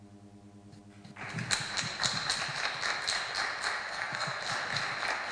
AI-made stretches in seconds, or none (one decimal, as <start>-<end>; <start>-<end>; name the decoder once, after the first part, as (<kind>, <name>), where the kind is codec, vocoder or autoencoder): 3.9-4.4 (codec, SNAC)